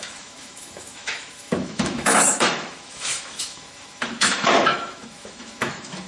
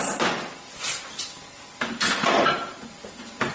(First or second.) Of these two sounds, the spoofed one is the first